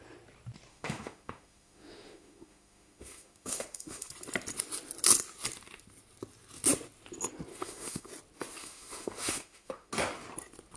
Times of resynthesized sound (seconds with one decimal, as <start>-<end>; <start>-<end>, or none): 0.7-4.1; 7.5-8.1; 8.6-9.9